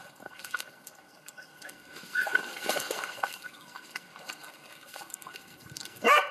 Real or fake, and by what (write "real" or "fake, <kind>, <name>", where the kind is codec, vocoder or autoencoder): fake, codec, SNAC